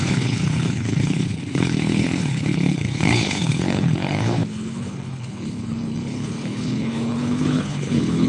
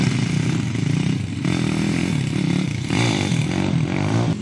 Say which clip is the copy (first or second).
first